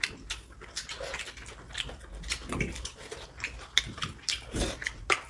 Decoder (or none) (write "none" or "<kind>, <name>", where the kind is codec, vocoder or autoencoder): none